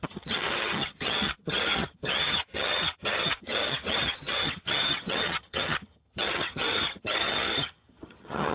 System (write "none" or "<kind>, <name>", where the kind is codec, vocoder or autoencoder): vocoder, HiFi-GAN